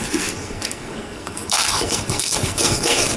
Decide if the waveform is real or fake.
fake